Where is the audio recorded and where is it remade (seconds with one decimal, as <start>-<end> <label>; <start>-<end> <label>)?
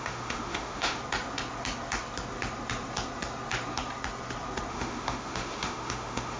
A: 0.0-1.0 remade; 1.0-4.7 recorded; 4.7-6.4 remade